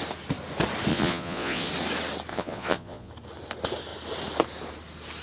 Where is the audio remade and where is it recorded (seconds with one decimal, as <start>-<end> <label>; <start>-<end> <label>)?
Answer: 0.0-0.9 recorded; 0.9-1.7 remade; 1.7-2.3 recorded; 2.3-3.1 remade; 3.1-5.2 recorded